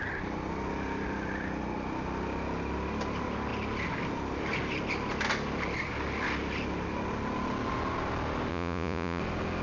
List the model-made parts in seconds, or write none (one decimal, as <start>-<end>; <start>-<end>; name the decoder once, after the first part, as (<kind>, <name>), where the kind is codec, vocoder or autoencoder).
8.5-9.2 (vocoder, Vocos)